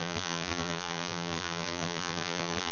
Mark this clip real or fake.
fake